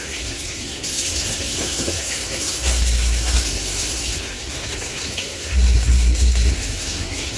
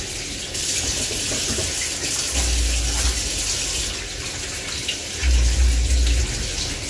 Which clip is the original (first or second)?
second